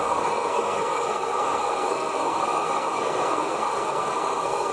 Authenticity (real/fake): fake